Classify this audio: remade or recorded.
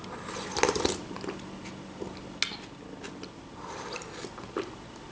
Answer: recorded